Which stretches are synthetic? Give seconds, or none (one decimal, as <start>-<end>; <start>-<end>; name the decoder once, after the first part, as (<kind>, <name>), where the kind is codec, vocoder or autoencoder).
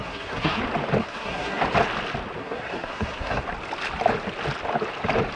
0.0-0.6 (codec, SNAC); 1.0-1.6; 2.4-3.4